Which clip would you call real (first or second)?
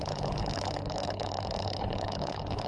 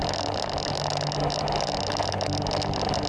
second